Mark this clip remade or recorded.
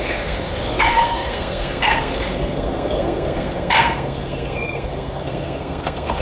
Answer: remade